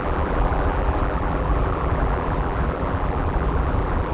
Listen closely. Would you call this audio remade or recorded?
remade